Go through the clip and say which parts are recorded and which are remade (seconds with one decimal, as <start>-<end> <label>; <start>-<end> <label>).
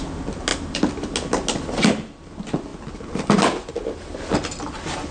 0.0-5.1 recorded